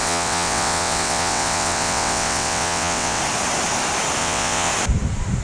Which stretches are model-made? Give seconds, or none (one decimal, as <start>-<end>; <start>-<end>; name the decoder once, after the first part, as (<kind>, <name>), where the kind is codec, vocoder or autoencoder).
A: 0.0-3.2 (vocoder, WaveNeXt); 4.2-4.7